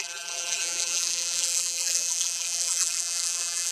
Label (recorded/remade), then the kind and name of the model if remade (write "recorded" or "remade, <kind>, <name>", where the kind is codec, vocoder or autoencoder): remade, vocoder, BigVGAN v2